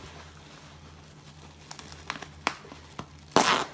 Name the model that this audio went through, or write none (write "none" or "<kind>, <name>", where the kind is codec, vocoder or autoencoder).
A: none